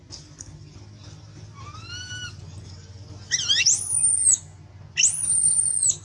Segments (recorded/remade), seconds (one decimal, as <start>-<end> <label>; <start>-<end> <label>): 0.0-6.0 recorded